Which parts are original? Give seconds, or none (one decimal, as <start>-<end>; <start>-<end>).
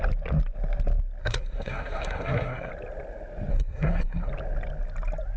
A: 0.0-1.2; 2.7-3.5; 4.3-5.4